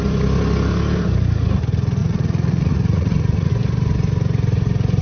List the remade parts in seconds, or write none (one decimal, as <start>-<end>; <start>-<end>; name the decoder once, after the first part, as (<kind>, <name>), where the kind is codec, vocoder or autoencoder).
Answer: 2.0-3.5 (vocoder, Vocos)